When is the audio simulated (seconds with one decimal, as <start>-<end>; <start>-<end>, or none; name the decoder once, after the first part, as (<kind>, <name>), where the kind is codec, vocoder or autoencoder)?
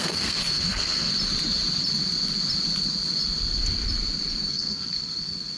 0.0-1.1 (codec, SNAC); 4.5-5.6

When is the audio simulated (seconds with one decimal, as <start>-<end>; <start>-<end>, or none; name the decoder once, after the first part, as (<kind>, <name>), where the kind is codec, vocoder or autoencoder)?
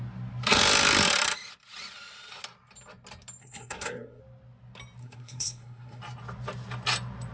3.4-4.2 (codec, SNAC); 5.0-6.0